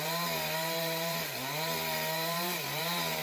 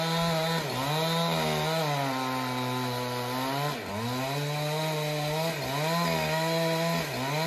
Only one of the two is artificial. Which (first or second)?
first